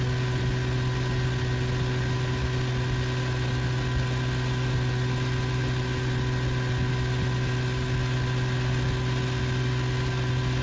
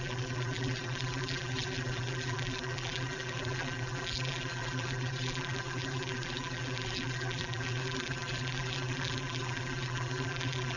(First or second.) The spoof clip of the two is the second